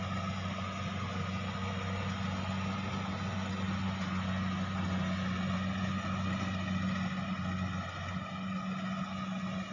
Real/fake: real